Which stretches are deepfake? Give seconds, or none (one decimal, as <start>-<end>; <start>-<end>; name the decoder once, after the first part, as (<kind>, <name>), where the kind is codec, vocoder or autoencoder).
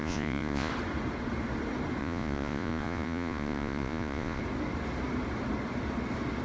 0.0-0.7 (vocoder, Vocos); 2.0-4.4